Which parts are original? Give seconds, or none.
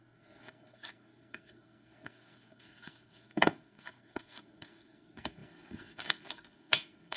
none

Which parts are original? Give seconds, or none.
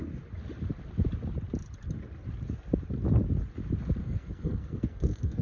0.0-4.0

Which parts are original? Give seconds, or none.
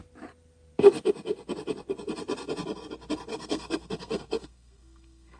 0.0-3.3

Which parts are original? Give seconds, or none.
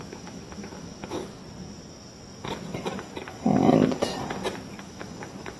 1.4-4.8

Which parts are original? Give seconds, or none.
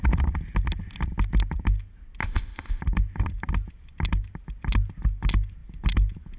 0.0-2.2; 2.8-6.4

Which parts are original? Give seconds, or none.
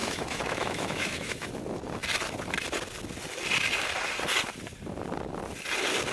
1.5-6.1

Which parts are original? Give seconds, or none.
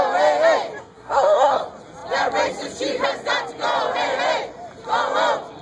0.0-0.8; 1.6-5.6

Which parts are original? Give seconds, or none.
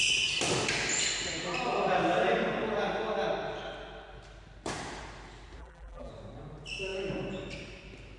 0.0-5.6; 6.1-8.2